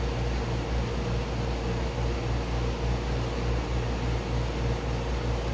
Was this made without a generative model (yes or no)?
yes